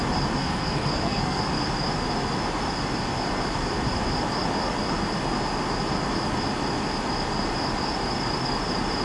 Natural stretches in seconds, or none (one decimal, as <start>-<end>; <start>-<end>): 0.0-0.4; 1.4-9.0